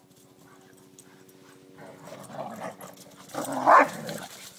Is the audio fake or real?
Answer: real